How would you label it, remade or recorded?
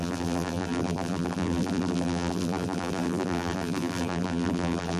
remade